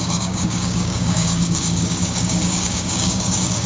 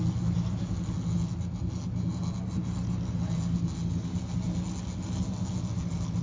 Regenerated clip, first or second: first